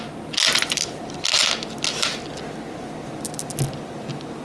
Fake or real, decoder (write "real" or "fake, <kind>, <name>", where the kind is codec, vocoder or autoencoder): real